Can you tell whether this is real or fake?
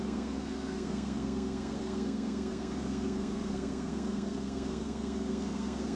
fake